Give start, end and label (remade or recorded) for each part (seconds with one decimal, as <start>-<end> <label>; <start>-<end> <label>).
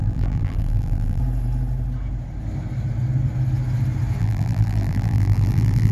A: 0.0-1.2 remade; 1.2-4.2 recorded; 4.2-5.9 remade